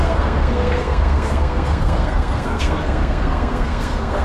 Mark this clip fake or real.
fake